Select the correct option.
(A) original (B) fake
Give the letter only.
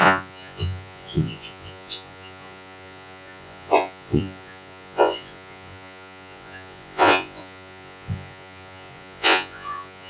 B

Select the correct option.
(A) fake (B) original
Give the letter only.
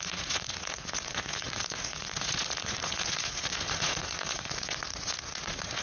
A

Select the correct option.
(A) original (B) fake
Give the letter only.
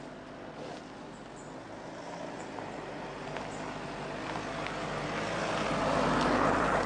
A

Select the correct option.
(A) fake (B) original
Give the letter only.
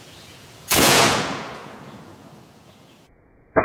A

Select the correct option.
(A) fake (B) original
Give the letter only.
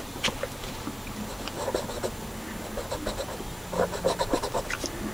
B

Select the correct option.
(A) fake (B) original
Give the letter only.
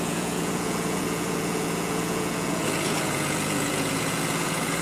A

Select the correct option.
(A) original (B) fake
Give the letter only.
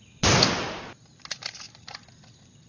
A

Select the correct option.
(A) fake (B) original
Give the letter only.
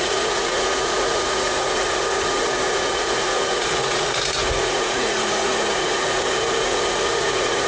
A